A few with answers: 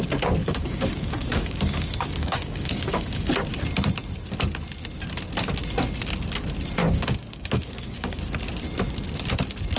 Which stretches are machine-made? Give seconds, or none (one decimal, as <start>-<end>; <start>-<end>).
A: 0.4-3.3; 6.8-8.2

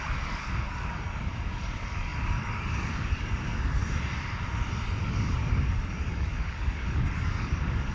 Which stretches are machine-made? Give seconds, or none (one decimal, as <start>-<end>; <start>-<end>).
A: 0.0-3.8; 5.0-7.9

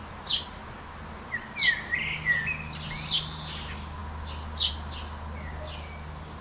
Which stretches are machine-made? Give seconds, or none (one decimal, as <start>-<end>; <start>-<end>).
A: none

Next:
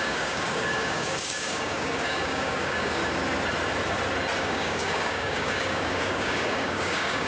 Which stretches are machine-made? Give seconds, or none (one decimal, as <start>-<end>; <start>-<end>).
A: 0.0-3.0; 4.4-7.3

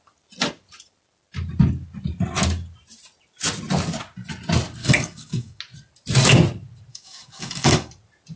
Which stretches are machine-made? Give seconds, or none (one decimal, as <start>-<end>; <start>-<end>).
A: 4.8-5.6; 6.9-7.9

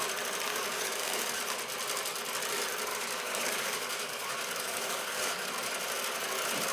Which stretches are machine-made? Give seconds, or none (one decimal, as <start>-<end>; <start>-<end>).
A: 0.5-1.4; 2.9-5.5

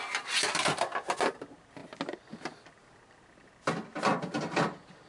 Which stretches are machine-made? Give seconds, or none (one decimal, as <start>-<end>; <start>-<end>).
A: none

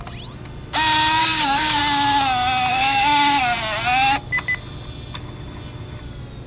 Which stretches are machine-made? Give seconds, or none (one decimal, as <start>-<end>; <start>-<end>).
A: 1.2-1.8; 2.7-3.4